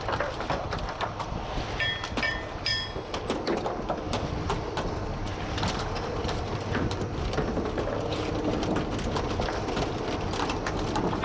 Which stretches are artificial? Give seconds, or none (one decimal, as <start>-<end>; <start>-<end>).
none